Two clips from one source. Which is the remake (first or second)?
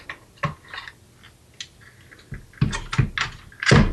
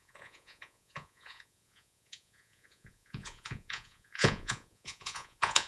second